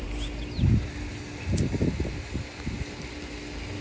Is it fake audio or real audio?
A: real